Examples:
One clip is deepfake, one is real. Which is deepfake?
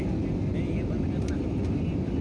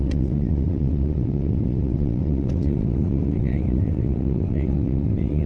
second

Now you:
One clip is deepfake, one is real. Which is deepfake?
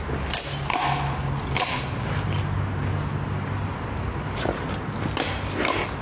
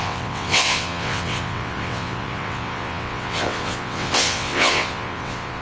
second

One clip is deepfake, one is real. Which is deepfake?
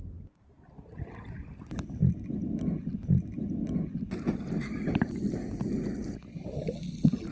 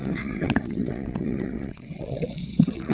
second